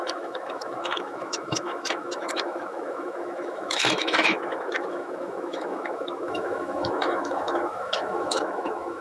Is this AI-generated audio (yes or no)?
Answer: yes